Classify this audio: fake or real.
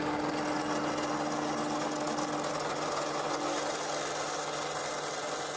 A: real